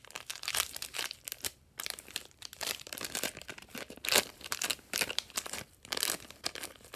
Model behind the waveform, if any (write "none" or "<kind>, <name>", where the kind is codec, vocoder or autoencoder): vocoder, BigVGAN v2